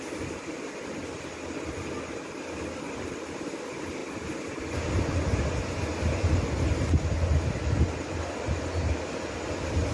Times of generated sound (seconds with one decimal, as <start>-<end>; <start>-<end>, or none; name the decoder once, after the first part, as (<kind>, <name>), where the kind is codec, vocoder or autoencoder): none